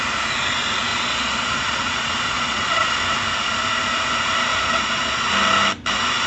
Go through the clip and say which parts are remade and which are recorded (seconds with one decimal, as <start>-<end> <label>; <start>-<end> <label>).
0.0-0.9 recorded; 0.9-2.9 remade; 2.9-4.5 recorded; 4.5-5.3 remade; 5.3-6.3 recorded